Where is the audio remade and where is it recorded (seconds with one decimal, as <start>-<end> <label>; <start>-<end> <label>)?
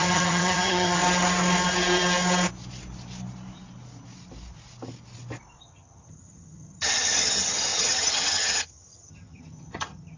0.0-1.0 remade; 1.0-5.6 recorded; 5.6-10.2 remade